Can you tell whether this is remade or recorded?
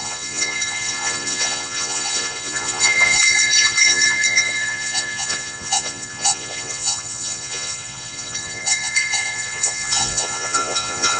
remade